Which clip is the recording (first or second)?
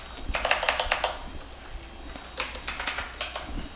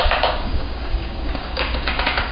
first